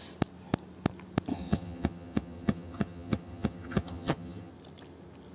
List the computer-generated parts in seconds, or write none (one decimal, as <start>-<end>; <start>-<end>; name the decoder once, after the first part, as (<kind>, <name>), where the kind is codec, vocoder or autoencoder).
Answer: 1.3-4.5 (vocoder, HiFi-GAN)